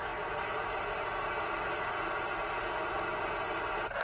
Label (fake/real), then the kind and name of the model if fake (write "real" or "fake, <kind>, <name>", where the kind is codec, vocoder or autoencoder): real